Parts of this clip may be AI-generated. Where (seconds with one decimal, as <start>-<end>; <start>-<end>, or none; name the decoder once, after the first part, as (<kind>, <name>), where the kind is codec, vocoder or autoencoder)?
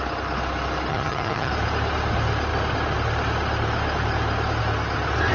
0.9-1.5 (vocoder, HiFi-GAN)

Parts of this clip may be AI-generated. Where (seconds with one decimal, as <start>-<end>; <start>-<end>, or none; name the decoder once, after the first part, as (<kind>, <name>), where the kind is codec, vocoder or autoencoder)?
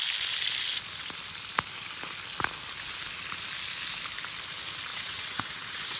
4.9-6.0 (vocoder, WaveNeXt)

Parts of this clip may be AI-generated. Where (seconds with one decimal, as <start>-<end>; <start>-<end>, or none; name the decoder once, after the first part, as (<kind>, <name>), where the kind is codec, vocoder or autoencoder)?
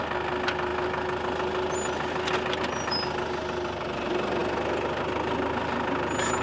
none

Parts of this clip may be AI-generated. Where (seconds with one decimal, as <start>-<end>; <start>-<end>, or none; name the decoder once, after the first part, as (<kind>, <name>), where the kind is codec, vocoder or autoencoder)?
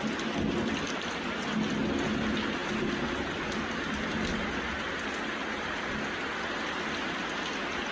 none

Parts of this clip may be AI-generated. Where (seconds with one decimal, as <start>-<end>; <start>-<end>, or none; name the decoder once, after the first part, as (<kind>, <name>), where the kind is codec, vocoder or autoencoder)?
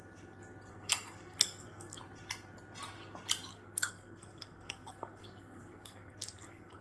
0.7-2.0 (codec, SNAC); 3.5-6.8